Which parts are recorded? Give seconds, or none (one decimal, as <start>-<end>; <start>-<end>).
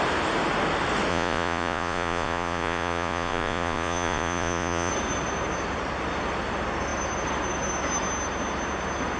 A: 0.0-1.1; 4.9-9.2